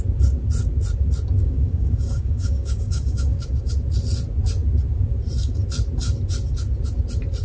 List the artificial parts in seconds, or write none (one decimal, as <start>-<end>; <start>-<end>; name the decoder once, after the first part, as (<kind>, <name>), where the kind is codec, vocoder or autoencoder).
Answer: 1.4-3.7 (codec, DAC)